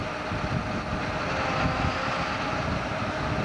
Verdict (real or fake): real